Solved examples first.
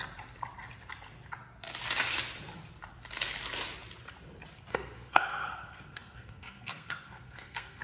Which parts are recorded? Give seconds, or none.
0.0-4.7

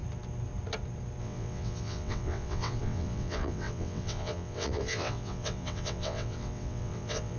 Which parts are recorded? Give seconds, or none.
0.0-1.2

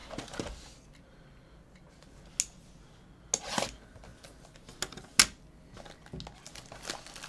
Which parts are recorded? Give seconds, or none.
0.0-7.3

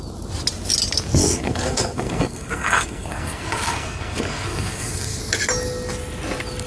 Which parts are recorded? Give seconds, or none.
0.0-1.2; 5.2-6.7

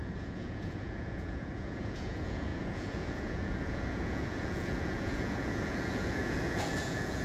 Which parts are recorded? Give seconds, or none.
none

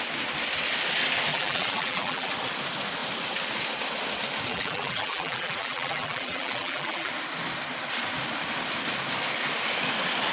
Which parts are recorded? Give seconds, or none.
0.0-1.3; 2.3-4.5; 7.1-10.3

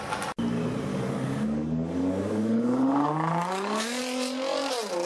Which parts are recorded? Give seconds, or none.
0.0-0.9; 4.0-5.1